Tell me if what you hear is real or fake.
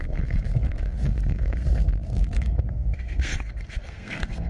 fake